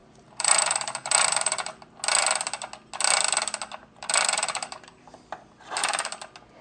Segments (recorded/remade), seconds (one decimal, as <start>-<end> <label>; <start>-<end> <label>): 0.0-1.8 remade; 1.8-3.8 recorded; 3.8-5.1 remade; 5.1-6.6 recorded